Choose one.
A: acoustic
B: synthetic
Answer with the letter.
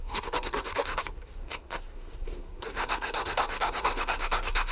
B